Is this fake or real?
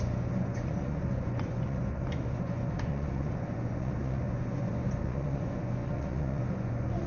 fake